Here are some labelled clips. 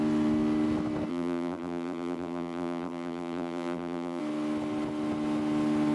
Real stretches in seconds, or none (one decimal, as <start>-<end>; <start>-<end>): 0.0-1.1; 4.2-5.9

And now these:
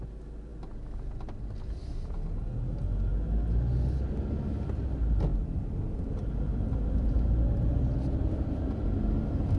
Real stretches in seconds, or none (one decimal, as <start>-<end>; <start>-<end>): 0.0-5.3; 7.1-9.6

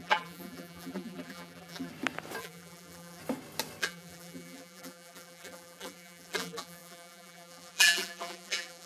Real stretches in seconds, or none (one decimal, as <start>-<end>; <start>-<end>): 1.9-2.4; 3.2-3.8

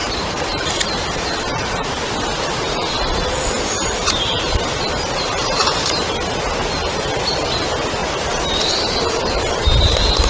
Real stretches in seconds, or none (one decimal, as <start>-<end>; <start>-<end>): 1.9-8.0

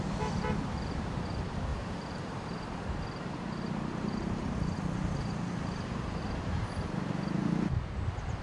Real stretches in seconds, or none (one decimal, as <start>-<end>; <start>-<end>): 0.0-1.7; 6.7-8.4

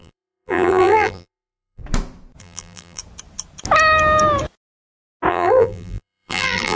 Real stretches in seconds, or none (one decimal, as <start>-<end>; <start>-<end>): 1.8-2.4; 3.0-5.3

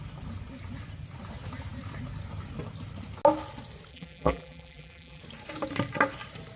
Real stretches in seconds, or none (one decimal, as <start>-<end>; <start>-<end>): 0.0-3.9; 5.2-6.6